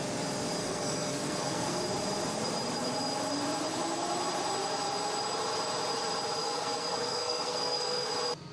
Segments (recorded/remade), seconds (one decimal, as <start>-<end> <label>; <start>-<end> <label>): 0.0-0.6 recorded; 0.6-1.8 remade; 1.8-6.4 recorded; 6.4-8.1 remade; 8.1-8.5 recorded